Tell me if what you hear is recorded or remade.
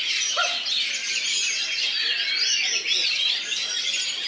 recorded